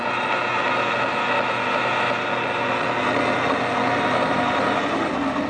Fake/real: real